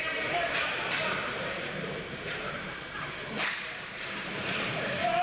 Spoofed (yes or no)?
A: yes